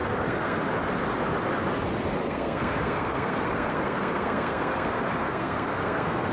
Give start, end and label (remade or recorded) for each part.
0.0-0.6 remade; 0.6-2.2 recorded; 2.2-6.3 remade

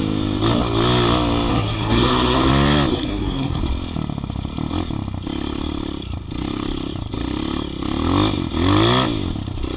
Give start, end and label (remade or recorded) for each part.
0.0-1.5 recorded; 1.5-2.5 remade; 2.5-2.9 recorded; 2.9-3.6 remade; 3.6-9.8 recorded